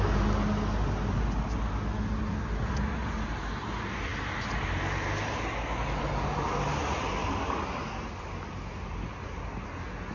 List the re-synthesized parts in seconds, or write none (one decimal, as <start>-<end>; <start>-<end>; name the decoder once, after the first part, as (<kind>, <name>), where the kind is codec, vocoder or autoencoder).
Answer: none